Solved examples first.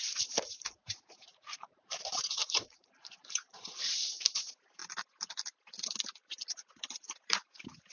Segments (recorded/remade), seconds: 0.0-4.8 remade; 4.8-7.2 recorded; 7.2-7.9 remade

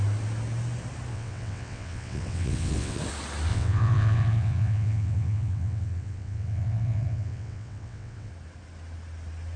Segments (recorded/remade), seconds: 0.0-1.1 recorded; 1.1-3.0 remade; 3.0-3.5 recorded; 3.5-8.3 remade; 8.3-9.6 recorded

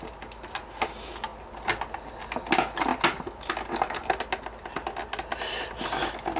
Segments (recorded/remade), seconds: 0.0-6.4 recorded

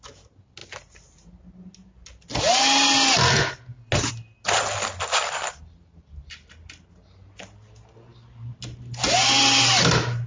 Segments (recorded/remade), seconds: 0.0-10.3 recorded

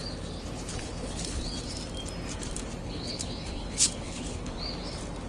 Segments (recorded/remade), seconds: 0.0-0.7 recorded; 0.7-1.4 remade; 1.4-2.8 recorded; 2.8-4.6 remade; 4.6-5.3 recorded

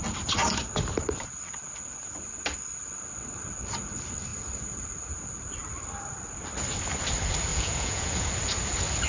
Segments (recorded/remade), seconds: 0.0-7.5 recorded; 7.5-8.3 remade; 8.3-9.1 recorded

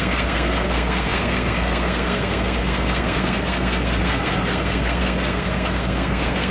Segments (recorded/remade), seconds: 0.0-6.5 remade

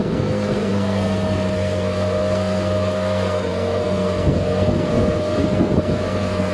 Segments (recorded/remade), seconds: 0.0-6.5 remade